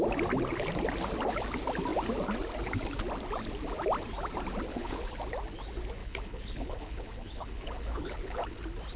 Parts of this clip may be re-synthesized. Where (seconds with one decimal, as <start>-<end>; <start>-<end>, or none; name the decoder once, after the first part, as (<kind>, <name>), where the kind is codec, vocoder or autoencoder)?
4.7-5.2 (codec, HILCodec); 6.0-8.6